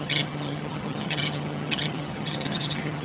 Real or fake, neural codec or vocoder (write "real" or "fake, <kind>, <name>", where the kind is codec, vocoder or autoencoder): fake, vocoder, HiFi-GAN